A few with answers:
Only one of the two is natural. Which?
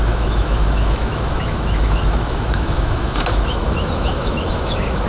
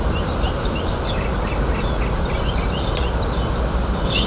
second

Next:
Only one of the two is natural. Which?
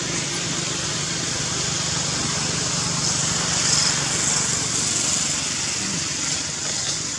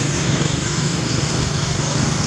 first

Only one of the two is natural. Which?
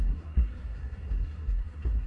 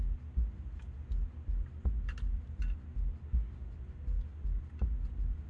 second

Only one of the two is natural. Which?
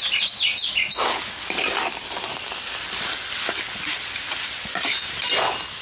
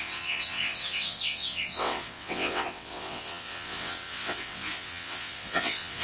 first